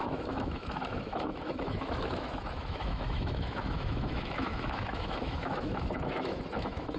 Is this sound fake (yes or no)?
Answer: yes